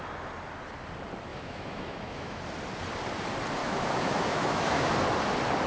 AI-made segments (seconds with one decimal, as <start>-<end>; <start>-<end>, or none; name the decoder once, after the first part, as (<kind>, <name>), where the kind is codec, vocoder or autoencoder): 1.3-2.4 (autoencoder, DAC-VAE); 3.6-4.9